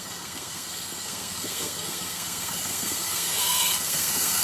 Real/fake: fake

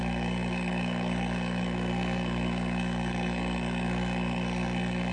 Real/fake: fake